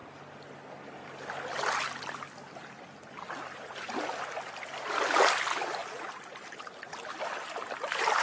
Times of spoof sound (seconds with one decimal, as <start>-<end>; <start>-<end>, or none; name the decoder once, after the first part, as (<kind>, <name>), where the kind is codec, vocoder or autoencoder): none

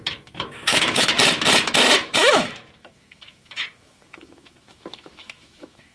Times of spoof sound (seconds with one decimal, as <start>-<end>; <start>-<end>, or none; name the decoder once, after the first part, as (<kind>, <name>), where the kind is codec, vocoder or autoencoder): 0.0-1.1 (autoencoder, DAC-VAE); 2.0-5.9

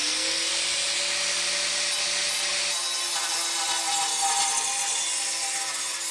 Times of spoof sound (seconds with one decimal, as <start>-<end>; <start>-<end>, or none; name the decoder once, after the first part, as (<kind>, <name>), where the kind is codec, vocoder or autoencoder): 0.0-0.5 (codec, SNAC)

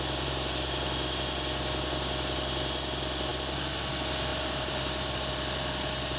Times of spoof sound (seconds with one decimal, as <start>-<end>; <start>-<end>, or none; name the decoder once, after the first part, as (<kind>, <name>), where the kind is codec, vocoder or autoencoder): 4.3-5.3 (vocoder, BigVGAN v2)

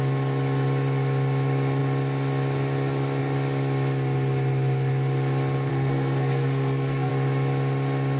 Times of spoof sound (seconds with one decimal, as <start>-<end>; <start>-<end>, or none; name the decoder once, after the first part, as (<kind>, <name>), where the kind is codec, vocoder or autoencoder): 5.7-7.1 (codec, SNAC)

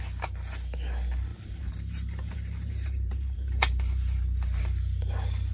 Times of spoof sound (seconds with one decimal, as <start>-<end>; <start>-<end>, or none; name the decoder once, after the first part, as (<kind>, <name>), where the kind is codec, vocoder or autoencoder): 1.3-4.6 (vocoder, BigVGAN v2)

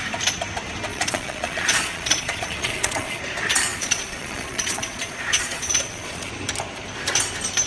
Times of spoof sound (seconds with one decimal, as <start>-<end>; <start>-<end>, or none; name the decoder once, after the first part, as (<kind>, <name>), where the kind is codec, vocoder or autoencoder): 0.9-3.2 (vocoder, Vocos); 3.7-6.3

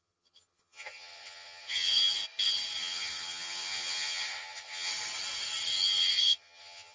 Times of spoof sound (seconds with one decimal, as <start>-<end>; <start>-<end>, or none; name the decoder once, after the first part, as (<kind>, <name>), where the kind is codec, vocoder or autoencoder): 0.0-2.0 (vocoder, HiFi-GAN); 2.8-4.9; 6.2-6.9